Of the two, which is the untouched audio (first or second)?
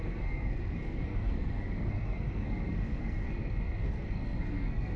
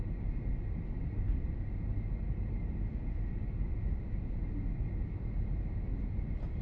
second